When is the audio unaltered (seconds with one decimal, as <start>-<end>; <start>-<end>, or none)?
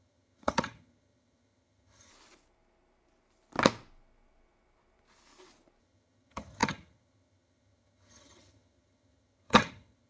2.1-5.8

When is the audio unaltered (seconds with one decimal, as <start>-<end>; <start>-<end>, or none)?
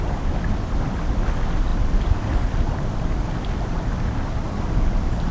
0.0-5.3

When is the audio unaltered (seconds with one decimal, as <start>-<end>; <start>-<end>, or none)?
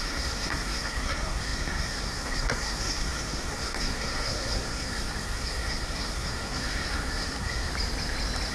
7.7-8.5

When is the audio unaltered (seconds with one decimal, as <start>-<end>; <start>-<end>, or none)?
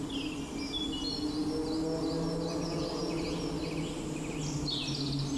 0.0-5.4